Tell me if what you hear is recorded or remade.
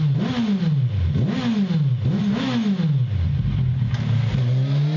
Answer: recorded